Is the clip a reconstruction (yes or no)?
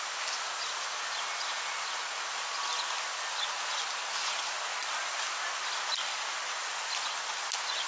no